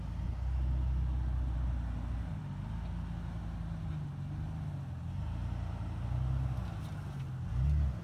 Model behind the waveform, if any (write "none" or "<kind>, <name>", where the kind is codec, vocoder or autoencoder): none